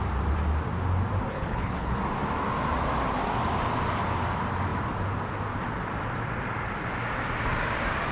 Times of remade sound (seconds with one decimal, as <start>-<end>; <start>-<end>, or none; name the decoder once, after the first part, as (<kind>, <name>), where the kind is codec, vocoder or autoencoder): 1.3-2.0 (codec, HILCodec)